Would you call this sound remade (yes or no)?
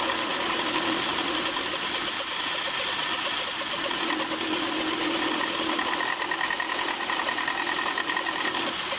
no